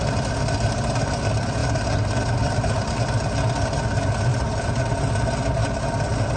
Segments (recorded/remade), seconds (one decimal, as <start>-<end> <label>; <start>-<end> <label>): 0.0-4.3 recorded; 4.3-4.8 remade; 4.8-6.4 recorded